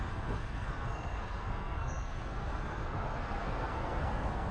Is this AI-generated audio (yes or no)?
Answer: yes